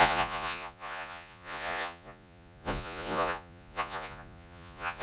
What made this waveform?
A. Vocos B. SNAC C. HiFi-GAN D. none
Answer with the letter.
A